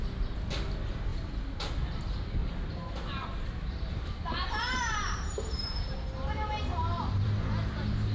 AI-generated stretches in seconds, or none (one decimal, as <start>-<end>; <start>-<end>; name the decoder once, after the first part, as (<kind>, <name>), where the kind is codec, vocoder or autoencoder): 2.4-7.3 (vocoder, BigVGAN v2)

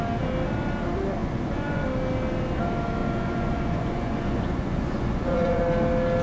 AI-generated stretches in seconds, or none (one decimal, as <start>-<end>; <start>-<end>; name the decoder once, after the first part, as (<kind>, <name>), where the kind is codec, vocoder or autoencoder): 1.2-1.8 (vocoder, Vocos); 3.0-5.6

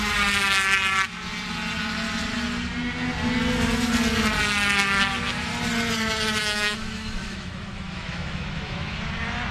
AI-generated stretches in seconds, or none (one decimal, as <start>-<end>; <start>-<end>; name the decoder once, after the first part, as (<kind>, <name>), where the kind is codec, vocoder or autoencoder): 6.4-9.0 (autoencoder, DAC-VAE)

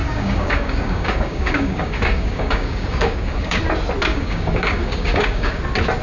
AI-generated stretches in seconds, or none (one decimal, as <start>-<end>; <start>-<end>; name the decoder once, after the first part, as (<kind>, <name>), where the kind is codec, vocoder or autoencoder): 0.0-3.6 (codec, DAC); 4.1-5.6

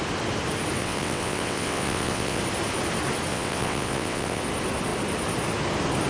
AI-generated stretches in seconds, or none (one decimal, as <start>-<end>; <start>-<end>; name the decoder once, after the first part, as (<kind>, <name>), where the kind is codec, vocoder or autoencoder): 0.8-2.4 (vocoder, WaveNeXt); 3.3-4.4

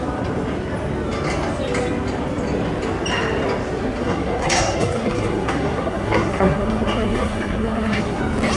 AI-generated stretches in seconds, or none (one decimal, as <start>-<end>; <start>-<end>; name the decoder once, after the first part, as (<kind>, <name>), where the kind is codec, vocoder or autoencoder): 4.0-8.2 (codec, SNAC)

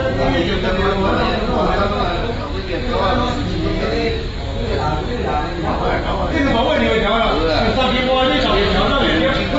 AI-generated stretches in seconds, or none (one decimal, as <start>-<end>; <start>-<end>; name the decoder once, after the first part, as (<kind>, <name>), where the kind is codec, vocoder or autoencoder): 2.2-2.8 (codec, DAC); 3.7-5.2

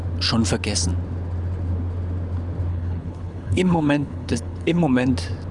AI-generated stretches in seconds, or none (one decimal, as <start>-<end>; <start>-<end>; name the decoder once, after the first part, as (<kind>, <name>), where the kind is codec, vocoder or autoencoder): 2.7-5.1 (codec, HILCodec)